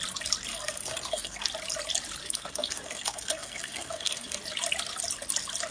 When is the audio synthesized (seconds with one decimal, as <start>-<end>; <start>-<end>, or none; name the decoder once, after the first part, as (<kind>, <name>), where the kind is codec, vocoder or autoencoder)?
0.5-1.5 (codec, SNAC); 2.2-4.4